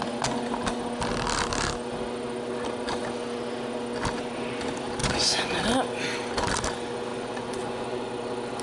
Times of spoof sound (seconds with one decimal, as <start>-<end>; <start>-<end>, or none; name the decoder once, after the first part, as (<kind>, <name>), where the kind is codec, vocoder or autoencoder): 5.0-5.6 (vocoder, Vocos); 7.1-8.1